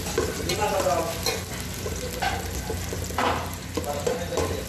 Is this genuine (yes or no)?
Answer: yes